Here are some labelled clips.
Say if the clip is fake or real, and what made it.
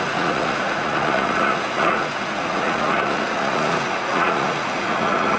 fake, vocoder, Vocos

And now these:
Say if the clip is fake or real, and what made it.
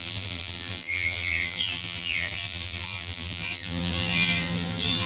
fake, vocoder, BigVGAN v2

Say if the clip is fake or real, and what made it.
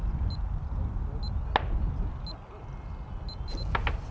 real